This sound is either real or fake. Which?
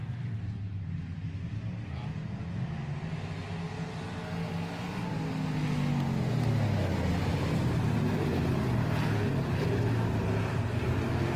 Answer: real